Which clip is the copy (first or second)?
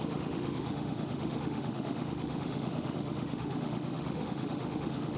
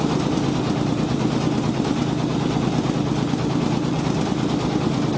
first